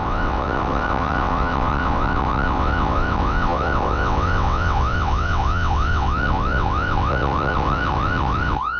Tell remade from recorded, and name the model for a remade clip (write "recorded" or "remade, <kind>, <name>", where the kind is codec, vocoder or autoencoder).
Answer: remade, vocoder, WaveNeXt